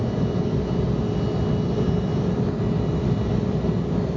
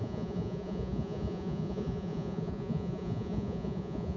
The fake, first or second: second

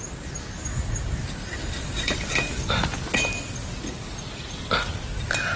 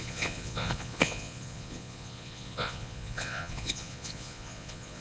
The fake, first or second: second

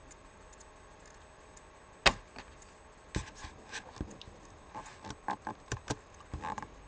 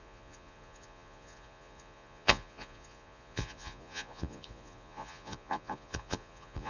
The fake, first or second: second